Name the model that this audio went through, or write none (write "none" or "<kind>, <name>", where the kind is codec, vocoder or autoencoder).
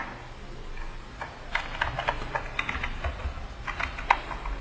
none